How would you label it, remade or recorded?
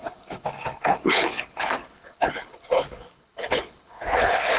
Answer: remade